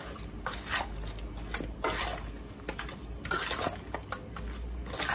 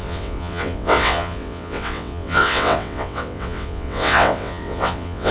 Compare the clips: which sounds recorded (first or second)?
first